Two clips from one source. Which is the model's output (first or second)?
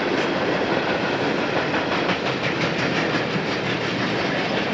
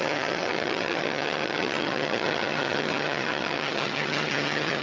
second